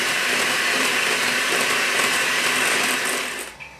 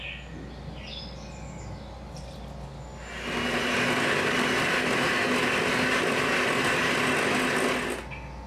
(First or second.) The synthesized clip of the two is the first